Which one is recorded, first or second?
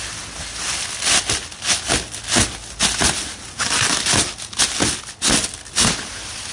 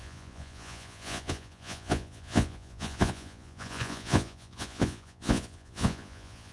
first